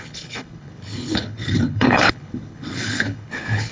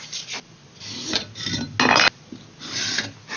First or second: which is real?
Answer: second